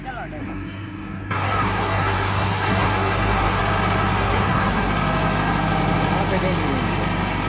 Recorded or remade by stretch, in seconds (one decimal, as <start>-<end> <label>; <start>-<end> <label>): 0.0-0.4 recorded; 0.4-3.6 remade; 3.6-4.2 recorded; 4.2-4.9 remade; 4.9-7.5 recorded